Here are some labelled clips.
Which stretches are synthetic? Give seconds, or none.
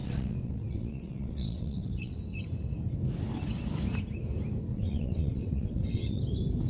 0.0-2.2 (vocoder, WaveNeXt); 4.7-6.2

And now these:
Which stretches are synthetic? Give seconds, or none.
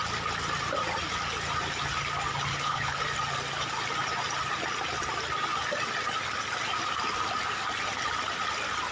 2.5-3.0 (codec, HILCodec)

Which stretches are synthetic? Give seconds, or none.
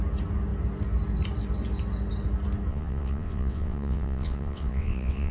2.7-5.3 (vocoder, WaveNeXt)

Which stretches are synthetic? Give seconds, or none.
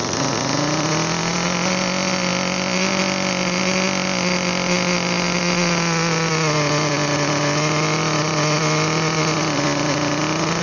none